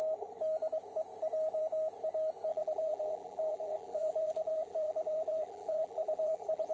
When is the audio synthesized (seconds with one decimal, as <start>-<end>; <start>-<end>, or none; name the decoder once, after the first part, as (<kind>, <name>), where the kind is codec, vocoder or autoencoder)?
2.5-6.7 (vocoder, BigVGAN v2)